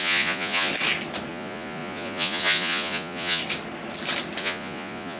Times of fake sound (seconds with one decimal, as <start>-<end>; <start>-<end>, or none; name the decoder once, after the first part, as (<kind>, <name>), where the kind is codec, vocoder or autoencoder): 0.0-0.7 (vocoder, Vocos); 1.3-3.4; 4.4-5.2